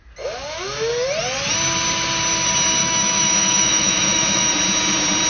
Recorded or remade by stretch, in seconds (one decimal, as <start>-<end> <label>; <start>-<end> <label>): 0.0-2.8 recorded; 2.8-4.5 remade; 4.5-5.3 recorded